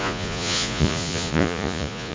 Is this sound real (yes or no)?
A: no